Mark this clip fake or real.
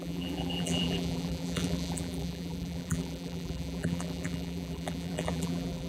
fake